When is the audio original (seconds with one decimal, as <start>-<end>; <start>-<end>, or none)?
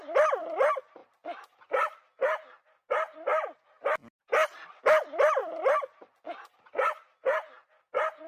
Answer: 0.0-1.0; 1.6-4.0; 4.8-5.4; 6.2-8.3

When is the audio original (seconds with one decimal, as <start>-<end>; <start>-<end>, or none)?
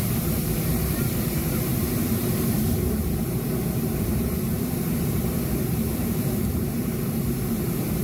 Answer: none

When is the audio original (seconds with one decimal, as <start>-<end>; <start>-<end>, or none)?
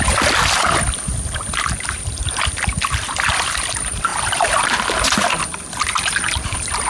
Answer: 0.0-4.1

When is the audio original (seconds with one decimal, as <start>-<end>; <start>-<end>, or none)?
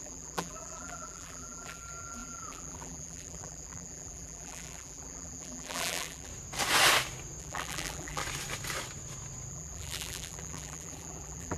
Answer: 6.3-7.4; 8.2-9.5